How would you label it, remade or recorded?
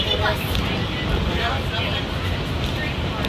recorded